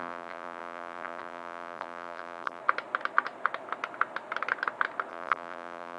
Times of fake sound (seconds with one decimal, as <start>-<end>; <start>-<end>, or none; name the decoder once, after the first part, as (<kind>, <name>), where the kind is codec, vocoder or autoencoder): 0.0-2.6 (vocoder, BigVGAN v2); 5.1-6.0